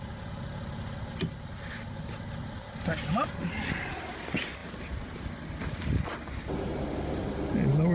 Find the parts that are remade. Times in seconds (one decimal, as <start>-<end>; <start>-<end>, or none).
none